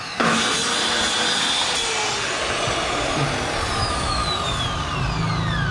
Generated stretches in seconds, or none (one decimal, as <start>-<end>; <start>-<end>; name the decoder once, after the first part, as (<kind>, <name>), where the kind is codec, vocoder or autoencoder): 0.0-0.4 (autoencoder, DAC-VAE); 3.8-4.2